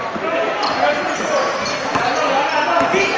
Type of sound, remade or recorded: recorded